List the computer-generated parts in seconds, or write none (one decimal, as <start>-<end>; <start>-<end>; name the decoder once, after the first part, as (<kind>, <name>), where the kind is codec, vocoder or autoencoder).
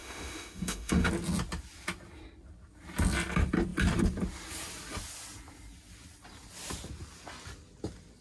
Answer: 0.0-1.1 (autoencoder, DAC-VAE)